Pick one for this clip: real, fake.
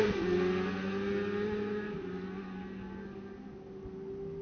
real